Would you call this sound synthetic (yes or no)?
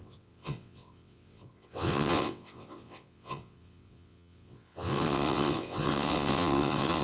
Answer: yes